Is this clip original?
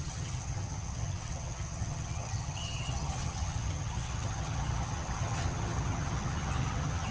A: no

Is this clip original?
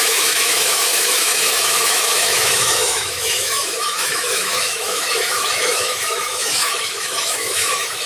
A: no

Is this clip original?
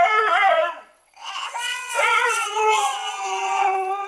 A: no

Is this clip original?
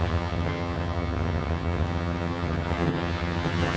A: no